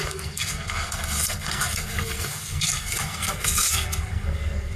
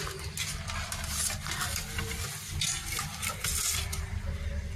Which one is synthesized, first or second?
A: first